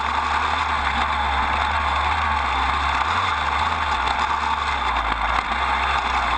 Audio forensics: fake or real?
real